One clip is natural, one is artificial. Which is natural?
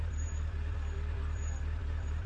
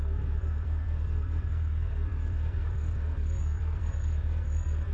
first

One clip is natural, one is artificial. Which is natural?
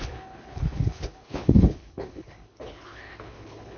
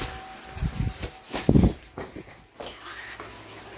second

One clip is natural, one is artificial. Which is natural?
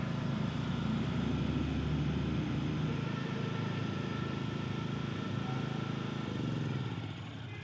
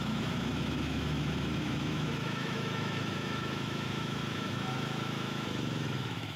first